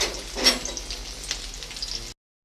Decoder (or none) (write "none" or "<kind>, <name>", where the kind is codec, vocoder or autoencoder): none